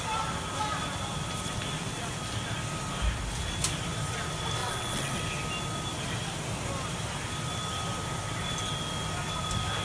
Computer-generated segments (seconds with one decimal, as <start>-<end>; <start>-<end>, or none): 4.6-5.2